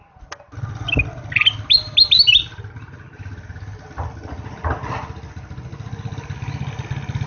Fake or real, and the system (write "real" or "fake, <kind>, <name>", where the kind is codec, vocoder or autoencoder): real